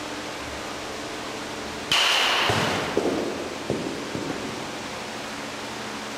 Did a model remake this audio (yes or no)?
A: no